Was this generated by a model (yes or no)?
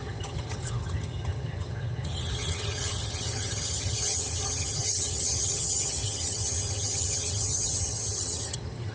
yes